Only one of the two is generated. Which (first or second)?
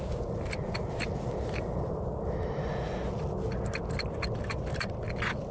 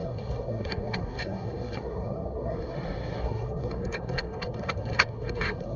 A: second